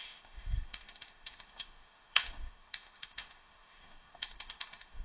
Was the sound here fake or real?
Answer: fake